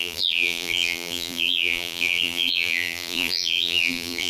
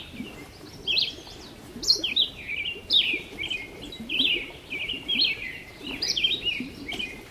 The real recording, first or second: second